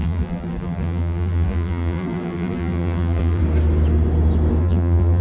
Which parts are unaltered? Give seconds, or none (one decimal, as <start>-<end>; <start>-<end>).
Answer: 3.4-4.6